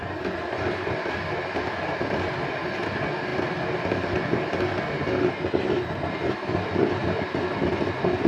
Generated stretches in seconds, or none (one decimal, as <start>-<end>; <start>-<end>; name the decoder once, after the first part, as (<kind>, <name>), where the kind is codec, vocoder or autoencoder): none